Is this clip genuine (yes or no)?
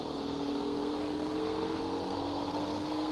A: no